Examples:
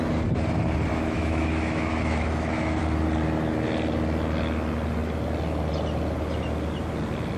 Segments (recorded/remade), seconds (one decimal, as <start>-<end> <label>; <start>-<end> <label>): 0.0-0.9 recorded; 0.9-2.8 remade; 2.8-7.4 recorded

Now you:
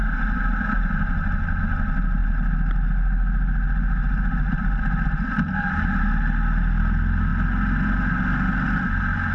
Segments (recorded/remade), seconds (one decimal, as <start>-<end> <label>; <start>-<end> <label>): 0.0-9.3 recorded

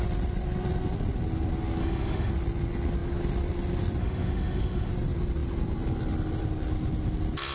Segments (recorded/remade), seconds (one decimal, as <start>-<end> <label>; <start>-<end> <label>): 0.0-1.8 recorded; 1.8-2.3 remade; 2.3-4.0 recorded; 4.0-4.9 remade; 4.9-7.5 recorded